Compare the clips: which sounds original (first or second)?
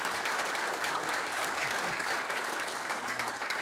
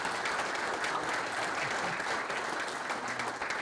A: second